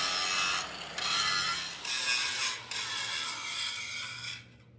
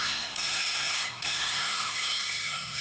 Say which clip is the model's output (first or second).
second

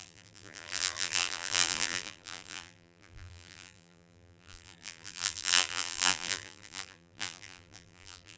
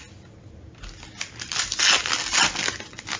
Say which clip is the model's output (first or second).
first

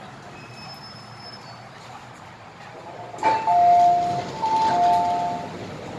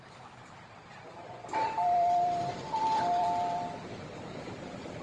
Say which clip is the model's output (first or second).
second